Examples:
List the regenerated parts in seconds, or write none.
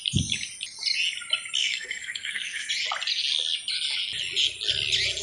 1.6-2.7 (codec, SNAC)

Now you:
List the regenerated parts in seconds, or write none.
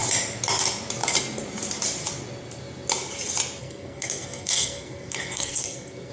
3.6-6.1 (codec, SNAC)